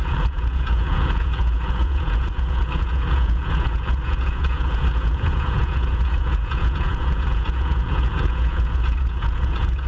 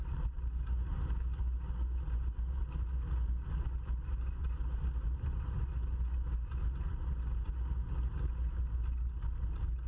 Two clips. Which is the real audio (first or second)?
second